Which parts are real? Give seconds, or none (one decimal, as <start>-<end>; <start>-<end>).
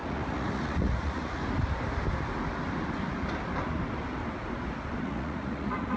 1.4-5.0